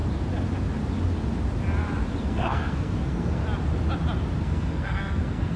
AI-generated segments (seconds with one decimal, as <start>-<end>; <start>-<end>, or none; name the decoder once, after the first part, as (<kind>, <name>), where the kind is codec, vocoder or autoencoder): 2.2-3.4 (codec, SNAC); 4.4-5.6